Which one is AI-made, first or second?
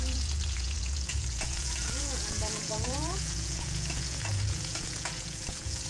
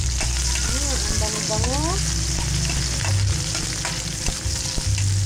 first